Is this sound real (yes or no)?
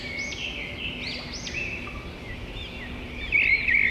yes